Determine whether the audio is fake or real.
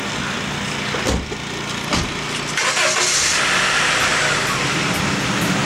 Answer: real